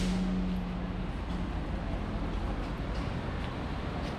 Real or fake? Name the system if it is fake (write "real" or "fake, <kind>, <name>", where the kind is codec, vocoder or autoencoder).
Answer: real